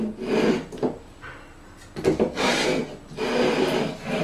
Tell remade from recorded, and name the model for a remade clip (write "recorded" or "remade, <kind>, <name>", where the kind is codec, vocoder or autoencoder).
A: recorded